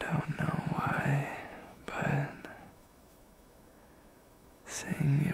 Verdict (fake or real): fake